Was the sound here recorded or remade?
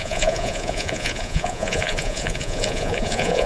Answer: remade